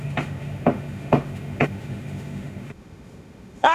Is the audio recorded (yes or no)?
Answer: no